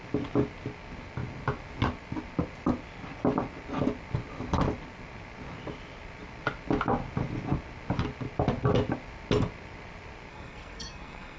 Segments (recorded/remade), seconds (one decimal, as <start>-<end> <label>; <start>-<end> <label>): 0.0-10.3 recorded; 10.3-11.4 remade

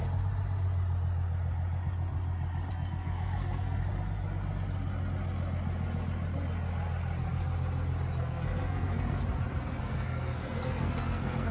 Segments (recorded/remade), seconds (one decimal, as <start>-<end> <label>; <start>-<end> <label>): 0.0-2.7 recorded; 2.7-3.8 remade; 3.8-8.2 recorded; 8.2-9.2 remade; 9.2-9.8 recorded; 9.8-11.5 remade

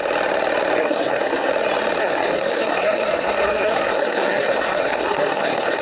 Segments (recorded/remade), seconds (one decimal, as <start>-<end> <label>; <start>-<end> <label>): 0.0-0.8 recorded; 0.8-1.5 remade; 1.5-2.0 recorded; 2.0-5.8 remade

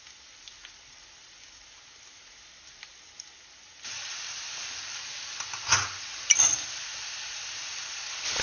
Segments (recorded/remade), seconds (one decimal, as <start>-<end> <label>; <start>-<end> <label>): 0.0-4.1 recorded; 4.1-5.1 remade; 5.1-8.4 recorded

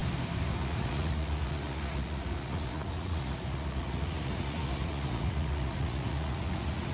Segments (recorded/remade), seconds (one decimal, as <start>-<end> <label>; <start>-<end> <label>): 0.0-0.6 recorded; 0.6-6.9 remade

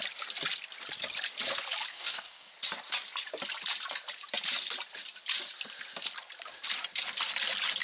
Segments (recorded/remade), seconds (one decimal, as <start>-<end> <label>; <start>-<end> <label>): 0.0-1.9 recorded; 1.9-2.5 remade; 2.5-7.8 recorded

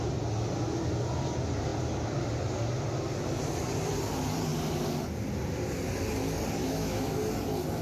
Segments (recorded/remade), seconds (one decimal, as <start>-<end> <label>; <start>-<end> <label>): 0.0-6.6 recorded; 6.6-7.2 remade; 7.2-7.8 recorded